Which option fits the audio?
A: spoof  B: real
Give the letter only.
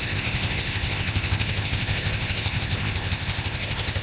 A